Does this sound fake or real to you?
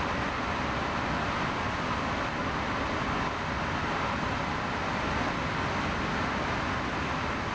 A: real